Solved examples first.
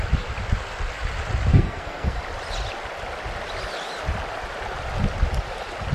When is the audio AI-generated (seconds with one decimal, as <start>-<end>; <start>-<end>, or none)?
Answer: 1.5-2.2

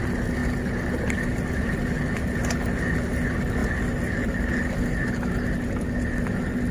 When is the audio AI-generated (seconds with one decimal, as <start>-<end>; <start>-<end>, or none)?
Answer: none

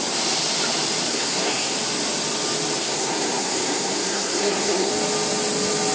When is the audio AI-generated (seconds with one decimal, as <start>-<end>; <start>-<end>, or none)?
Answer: 1.1-1.7; 2.8-4.9